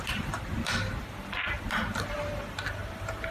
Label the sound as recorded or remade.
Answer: remade